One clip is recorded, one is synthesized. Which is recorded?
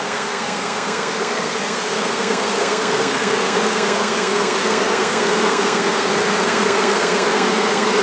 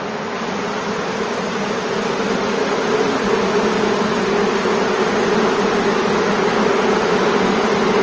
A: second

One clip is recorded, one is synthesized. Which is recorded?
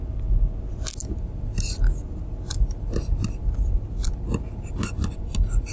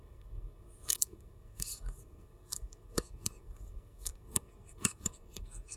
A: first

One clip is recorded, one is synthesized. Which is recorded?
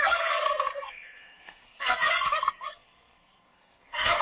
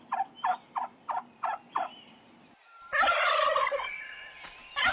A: second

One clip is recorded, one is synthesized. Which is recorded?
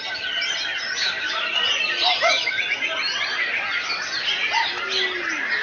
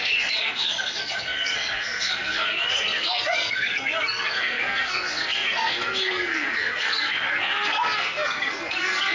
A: first